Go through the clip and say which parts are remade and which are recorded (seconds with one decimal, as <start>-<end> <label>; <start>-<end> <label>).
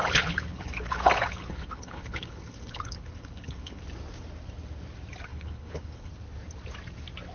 0.0-3.8 remade; 3.8-5.3 recorded; 5.3-6.1 remade; 6.1-7.3 recorded